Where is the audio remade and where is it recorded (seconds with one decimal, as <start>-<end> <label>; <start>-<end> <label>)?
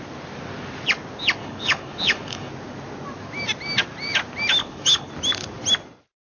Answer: 0.0-1.4 recorded; 1.4-2.5 remade; 2.5-4.6 recorded; 4.6-5.1 remade; 5.1-6.2 recorded